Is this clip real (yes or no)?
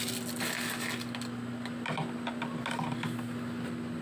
yes